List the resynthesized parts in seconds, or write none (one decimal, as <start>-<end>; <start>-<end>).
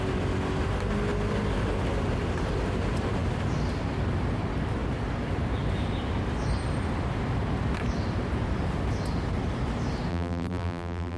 10.1-11.2